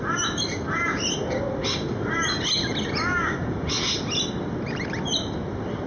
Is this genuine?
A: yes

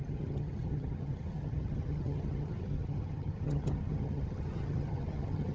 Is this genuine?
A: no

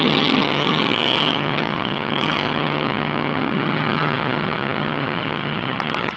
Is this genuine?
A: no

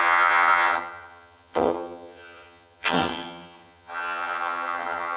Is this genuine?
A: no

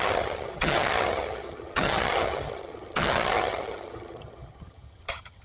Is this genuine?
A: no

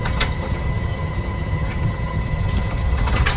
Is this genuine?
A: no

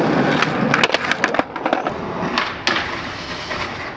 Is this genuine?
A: yes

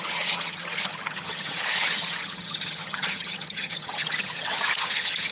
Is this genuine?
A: no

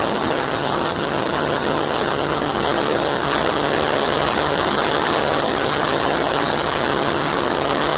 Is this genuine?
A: no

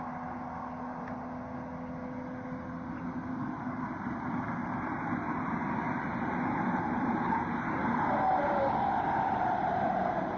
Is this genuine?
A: yes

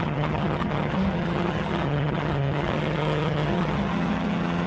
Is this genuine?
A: no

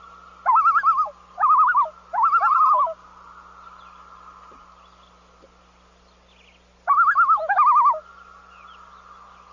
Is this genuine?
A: yes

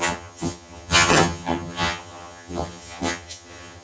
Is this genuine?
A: no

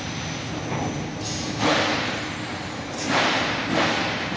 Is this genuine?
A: yes